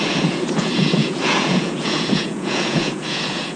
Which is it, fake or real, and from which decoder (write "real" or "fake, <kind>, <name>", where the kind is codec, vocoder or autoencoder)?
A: fake, vocoder, Vocos